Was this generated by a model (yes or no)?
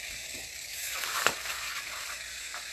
yes